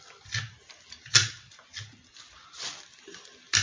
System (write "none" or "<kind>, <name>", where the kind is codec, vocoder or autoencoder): none